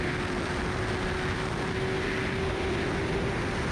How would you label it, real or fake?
real